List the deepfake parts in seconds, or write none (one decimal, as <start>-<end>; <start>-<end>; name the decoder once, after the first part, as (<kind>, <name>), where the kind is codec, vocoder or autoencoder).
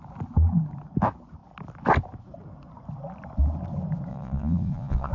4.1-5.1 (vocoder, Vocos)